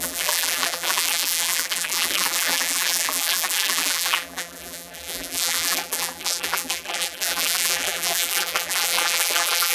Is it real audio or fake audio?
fake